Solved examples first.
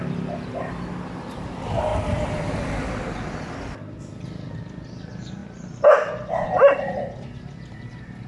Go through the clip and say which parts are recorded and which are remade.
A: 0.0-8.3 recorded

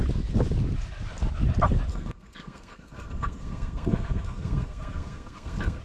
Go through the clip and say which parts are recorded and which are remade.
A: 0.0-1.9 recorded; 1.9-5.8 remade

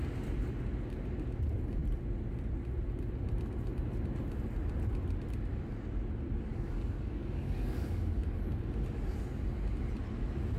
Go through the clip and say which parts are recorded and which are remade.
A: 0.0-6.5 recorded; 6.5-8.4 remade; 8.4-10.6 recorded

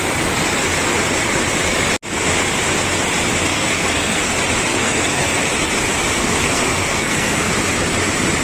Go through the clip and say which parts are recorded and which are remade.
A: 0.0-3.5 recorded; 3.5-4.3 remade; 4.3-4.7 recorded; 4.7-5.5 remade; 5.5-6.2 recorded; 6.2-7.5 remade; 7.5-8.4 recorded

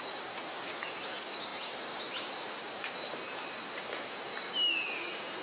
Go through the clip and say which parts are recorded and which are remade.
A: 0.0-5.4 recorded